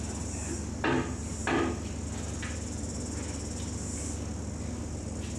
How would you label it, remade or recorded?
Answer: recorded